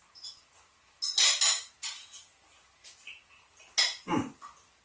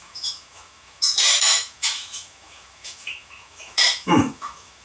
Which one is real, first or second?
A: first